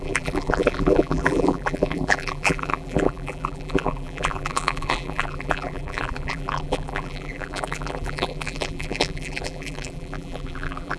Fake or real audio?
fake